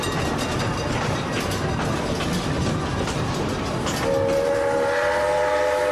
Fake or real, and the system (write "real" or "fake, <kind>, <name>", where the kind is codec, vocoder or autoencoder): real